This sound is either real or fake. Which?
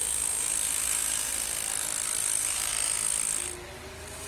real